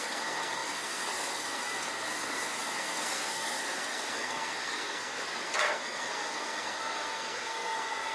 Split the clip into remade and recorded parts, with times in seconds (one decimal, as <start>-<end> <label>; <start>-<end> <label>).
0.0-8.1 remade